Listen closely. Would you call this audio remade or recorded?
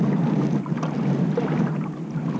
recorded